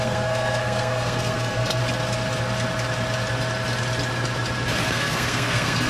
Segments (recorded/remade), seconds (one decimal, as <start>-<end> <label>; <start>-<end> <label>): 0.0-1.8 remade; 1.8-4.9 recorded; 4.9-5.9 remade